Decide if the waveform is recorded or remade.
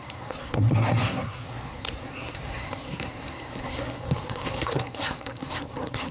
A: remade